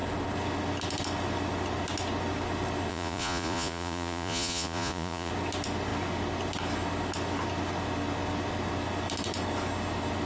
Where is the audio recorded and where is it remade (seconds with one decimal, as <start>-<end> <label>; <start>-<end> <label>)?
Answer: 0.0-2.9 recorded; 2.9-5.3 remade; 5.3-10.3 recorded